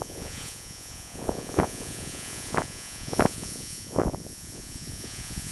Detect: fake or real fake